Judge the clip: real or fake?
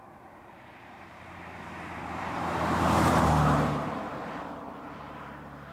fake